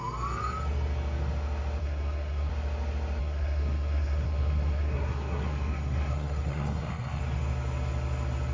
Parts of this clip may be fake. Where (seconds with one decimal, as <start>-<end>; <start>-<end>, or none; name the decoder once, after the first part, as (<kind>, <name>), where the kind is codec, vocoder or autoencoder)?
1.8-2.5 (codec, SNAC); 3.2-7.2